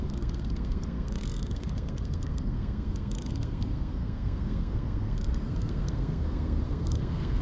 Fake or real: fake